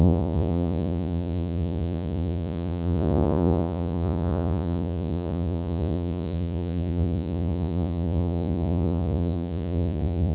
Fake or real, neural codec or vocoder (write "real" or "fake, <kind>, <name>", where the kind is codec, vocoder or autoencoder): fake, vocoder, Vocos